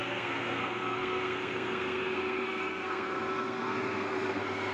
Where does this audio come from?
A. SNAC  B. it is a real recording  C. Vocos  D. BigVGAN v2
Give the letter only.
A